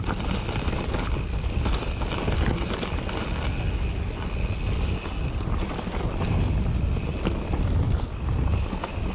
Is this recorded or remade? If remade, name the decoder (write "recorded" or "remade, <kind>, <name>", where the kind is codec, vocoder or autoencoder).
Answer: recorded